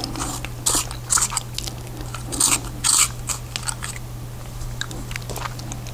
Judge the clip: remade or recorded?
recorded